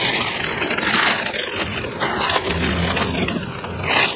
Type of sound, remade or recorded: recorded